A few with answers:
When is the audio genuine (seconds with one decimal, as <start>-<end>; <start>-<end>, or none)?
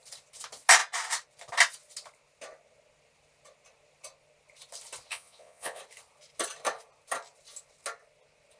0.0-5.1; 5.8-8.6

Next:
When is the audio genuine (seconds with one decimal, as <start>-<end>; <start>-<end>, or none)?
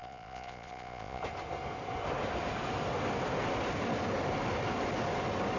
1.2-5.6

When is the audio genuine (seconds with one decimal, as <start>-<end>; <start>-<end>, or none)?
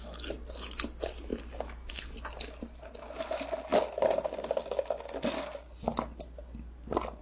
0.0-7.2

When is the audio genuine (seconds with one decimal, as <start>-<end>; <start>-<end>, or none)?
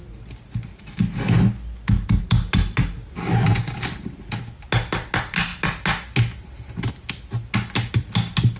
0.0-8.6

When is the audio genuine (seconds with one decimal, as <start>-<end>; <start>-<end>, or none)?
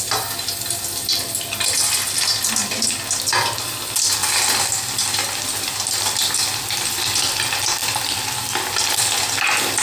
0.0-9.8